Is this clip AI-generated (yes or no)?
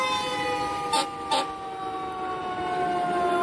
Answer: no